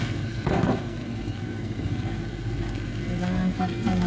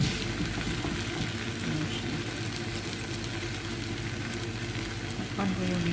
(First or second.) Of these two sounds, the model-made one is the first